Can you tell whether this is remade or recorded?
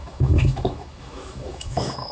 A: remade